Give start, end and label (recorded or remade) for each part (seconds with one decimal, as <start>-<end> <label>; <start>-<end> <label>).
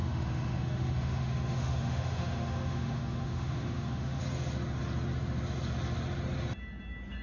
0.0-4.2 remade; 4.2-7.2 recorded